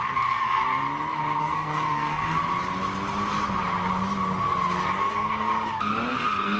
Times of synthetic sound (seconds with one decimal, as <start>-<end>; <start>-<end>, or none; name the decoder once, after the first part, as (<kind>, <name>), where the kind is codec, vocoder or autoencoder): 0.0-0.6 (codec, SNAC); 1.4-2.4; 5.1-5.5; 6.1-6.6